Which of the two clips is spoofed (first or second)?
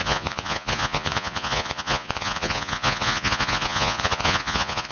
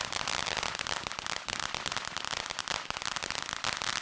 first